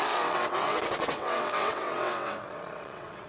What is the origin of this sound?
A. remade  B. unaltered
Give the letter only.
A